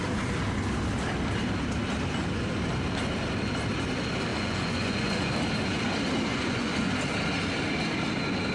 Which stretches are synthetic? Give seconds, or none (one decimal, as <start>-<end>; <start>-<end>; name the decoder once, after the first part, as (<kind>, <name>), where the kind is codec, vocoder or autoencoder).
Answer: 4.3-5.3 (vocoder, Vocos); 6.3-6.9